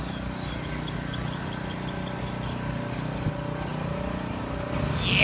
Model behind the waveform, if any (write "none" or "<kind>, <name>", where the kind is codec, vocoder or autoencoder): none